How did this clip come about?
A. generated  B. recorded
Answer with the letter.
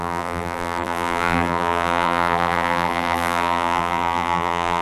A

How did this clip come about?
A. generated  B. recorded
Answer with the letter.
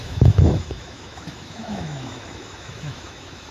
A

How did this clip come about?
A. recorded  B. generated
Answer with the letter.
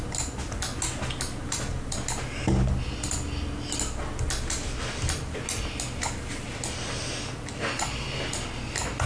A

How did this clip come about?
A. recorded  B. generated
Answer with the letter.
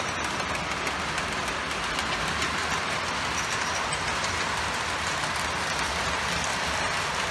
A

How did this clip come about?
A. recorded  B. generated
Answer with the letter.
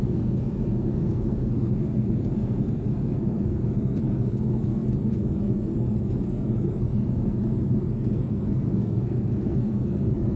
B